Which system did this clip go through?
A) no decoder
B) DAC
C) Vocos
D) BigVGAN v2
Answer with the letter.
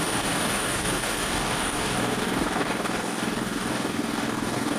B